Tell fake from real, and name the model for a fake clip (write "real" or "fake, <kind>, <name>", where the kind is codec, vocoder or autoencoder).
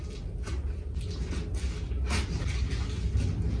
real